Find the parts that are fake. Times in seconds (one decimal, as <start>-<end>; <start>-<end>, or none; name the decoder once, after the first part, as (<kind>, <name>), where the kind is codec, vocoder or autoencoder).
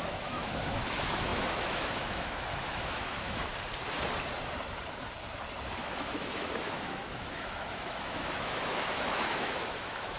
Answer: 0.0-3.5 (autoencoder, DAC-VAE); 5.8-10.2